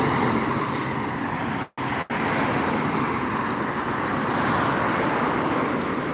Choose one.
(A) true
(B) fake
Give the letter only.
A